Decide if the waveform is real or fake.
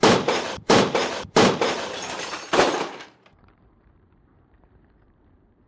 fake